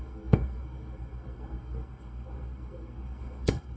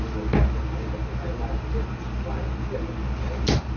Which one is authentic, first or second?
second